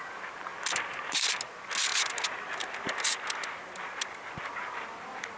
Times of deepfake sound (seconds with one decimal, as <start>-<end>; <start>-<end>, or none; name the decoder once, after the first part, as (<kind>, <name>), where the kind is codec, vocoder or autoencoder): none